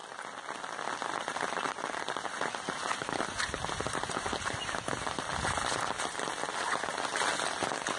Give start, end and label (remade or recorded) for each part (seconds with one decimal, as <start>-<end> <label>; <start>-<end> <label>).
0.0-8.0 recorded